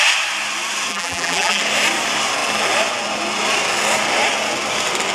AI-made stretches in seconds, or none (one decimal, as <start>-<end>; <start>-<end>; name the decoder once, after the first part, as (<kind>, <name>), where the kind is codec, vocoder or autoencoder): 0.9-1.6 (vocoder, BigVGAN v2)